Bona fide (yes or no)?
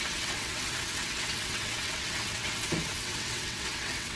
no